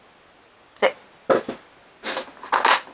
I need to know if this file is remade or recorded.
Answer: recorded